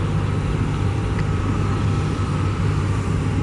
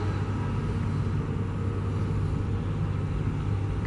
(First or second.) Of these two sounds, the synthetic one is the first